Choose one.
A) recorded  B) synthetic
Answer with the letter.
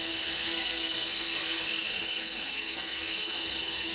B